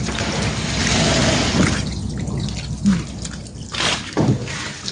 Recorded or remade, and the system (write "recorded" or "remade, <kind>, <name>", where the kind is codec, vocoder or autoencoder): recorded